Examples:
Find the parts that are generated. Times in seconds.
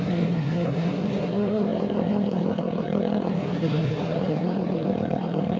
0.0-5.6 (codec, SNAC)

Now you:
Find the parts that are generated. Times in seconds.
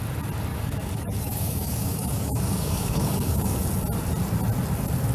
0.5-3.6 (codec, DAC)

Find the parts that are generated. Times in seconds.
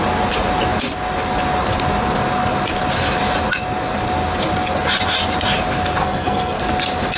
6.0-6.6 (codec, SNAC)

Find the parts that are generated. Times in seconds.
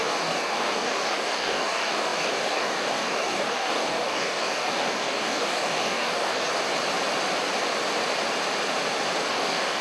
0.0-6.5 (codec, DAC); 9.3-9.8